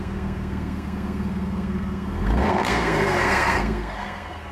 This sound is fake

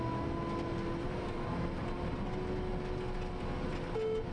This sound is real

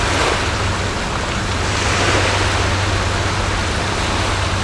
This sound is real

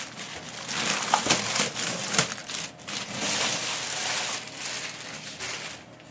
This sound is real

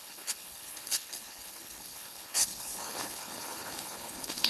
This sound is fake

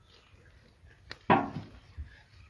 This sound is real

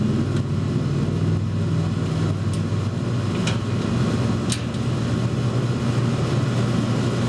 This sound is real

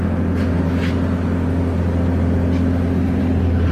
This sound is real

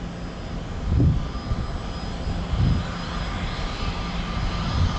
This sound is real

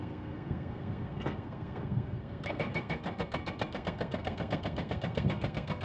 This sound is fake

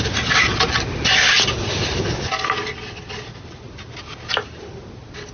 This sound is real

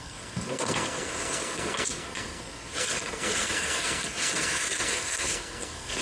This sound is fake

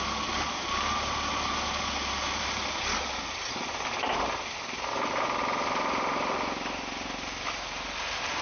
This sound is real